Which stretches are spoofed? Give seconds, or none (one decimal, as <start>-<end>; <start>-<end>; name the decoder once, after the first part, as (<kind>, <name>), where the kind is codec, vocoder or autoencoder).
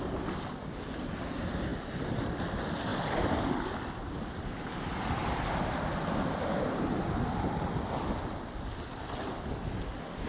none